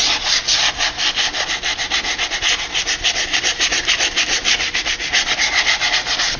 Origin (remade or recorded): recorded